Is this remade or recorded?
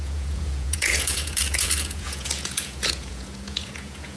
remade